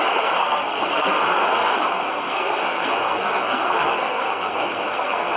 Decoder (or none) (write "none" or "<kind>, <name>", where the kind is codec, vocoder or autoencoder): codec, SNAC